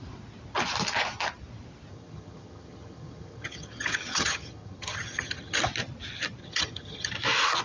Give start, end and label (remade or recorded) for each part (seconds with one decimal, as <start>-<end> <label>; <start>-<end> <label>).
0.0-1.9 recorded; 1.9-5.6 remade; 5.6-6.4 recorded; 6.4-7.1 remade; 7.1-7.6 recorded

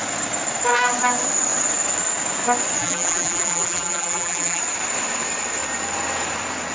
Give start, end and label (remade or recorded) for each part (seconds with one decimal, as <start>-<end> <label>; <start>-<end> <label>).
0.0-2.8 recorded; 2.8-4.6 remade; 4.6-6.7 recorded